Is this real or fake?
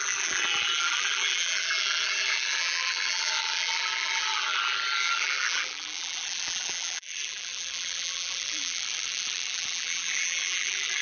fake